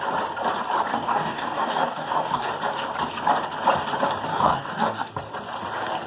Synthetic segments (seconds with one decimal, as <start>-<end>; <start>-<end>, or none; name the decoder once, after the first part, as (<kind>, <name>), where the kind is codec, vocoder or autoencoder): 0.9-2.5 (codec, DAC); 4.3-5.1